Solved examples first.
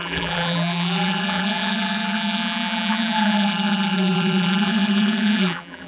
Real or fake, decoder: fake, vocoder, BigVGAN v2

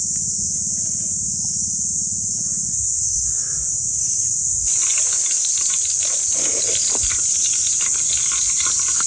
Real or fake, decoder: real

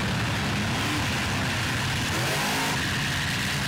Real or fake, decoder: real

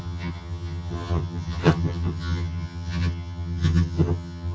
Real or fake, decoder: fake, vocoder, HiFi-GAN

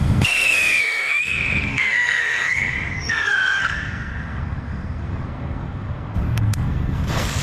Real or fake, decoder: fake, codec, SNAC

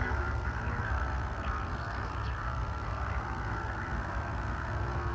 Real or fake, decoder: fake, codec, SNAC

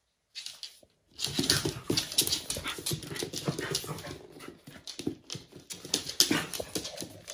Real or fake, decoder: real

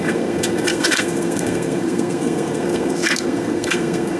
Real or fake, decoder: fake, codec, SNAC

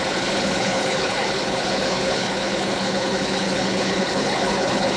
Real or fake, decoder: fake, codec, HILCodec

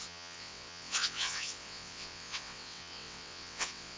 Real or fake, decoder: fake, vocoder, WaveNeXt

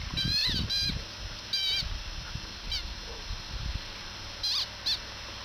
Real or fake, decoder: real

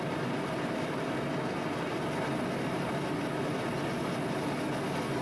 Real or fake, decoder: real